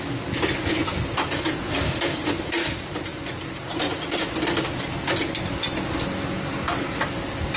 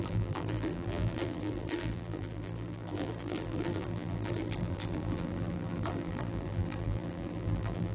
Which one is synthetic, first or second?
second